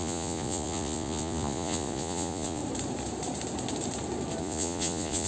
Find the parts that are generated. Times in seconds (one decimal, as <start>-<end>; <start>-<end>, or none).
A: 0.0-2.6; 4.4-5.3